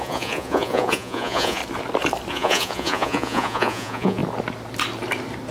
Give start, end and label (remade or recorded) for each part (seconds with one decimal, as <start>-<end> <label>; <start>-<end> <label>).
0.0-1.6 remade; 1.6-2.3 recorded; 2.3-4.2 remade; 4.2-5.5 recorded